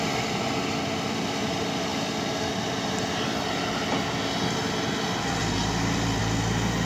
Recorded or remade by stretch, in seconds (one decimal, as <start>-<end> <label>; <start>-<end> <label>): 0.0-6.9 recorded